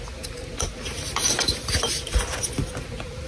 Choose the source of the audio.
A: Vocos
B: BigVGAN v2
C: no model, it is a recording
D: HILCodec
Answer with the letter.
C